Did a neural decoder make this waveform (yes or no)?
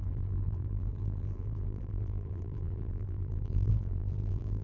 yes